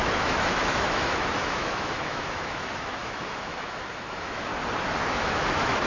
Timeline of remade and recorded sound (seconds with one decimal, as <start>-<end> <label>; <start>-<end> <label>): 0.0-4.5 remade; 4.5-5.1 recorded; 5.1-5.9 remade

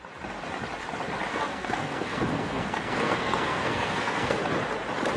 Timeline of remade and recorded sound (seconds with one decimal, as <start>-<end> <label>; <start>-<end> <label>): 0.0-1.3 recorded; 1.3-4.4 remade; 4.4-5.2 recorded